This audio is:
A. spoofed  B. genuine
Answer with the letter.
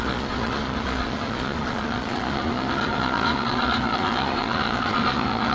A